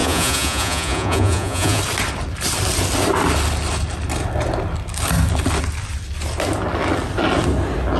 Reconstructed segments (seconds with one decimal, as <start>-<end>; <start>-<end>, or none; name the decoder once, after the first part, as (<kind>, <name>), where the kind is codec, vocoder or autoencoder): 0.0-1.8 (vocoder, Vocos)